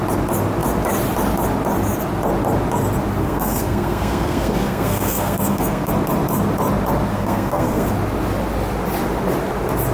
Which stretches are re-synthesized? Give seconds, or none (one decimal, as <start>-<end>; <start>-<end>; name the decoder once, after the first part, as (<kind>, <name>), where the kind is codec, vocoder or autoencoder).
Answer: 3.2-5.9 (codec, SNAC); 7.1-7.9